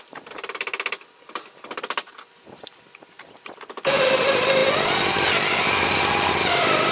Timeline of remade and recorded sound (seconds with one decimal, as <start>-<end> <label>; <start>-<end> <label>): 0.0-0.7 remade; 0.7-1.8 recorded; 1.8-4.6 remade; 4.6-5.6 recorded; 5.6-6.9 remade